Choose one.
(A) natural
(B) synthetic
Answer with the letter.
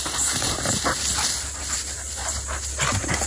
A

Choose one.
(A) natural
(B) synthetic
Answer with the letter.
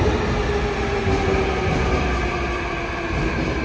A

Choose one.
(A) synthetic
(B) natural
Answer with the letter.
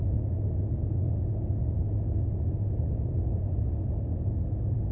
B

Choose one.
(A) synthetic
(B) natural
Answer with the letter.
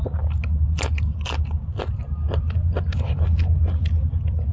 B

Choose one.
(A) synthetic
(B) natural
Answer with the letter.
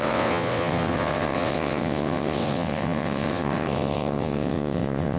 A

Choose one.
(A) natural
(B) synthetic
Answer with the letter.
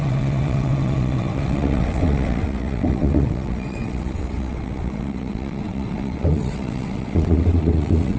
B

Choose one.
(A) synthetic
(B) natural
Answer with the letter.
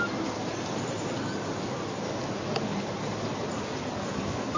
B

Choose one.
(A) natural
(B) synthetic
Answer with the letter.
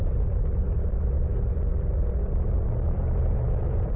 A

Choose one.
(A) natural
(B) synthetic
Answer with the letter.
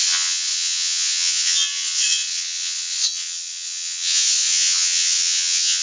B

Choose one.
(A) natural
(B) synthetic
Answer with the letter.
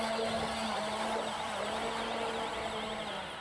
A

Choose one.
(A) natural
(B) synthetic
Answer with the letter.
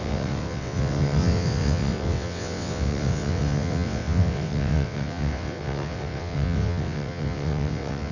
B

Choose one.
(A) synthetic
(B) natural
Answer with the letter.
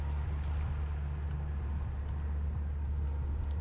B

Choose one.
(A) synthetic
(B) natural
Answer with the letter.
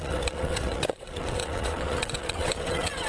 A